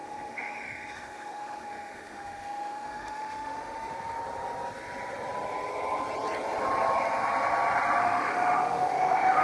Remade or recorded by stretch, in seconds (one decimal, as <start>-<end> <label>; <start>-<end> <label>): 0.0-3.9 remade; 3.9-8.0 recorded; 8.0-9.4 remade